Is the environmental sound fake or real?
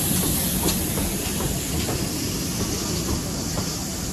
real